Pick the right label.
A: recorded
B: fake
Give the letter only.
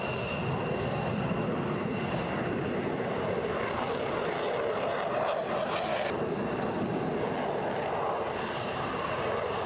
A